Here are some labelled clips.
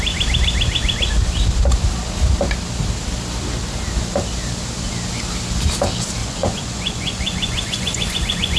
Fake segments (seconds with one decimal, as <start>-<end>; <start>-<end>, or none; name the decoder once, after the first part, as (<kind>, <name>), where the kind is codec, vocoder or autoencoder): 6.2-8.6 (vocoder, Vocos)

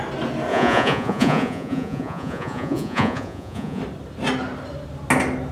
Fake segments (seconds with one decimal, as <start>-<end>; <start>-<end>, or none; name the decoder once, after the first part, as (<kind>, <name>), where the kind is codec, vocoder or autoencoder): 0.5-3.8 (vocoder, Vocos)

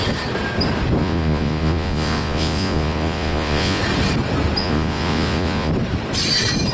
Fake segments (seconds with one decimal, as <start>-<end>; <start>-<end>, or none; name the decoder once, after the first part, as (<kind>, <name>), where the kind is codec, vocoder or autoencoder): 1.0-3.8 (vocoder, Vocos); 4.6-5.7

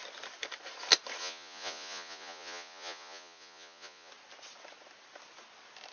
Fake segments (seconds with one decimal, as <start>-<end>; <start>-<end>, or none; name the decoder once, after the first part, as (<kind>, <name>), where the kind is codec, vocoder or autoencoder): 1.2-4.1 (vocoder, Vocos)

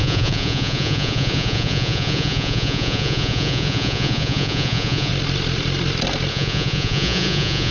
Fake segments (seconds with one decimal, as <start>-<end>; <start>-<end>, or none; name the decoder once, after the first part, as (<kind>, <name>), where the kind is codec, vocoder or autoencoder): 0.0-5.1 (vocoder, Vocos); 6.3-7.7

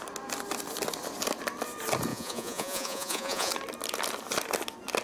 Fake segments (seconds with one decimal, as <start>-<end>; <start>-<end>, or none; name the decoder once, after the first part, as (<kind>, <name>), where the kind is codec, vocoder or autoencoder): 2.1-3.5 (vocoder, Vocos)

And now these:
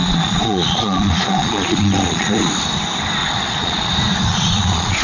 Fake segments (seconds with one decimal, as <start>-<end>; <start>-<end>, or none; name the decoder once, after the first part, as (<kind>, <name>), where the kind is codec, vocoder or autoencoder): 0.0-2.5 (vocoder, Vocos); 3.2-3.9; 4.3-5.0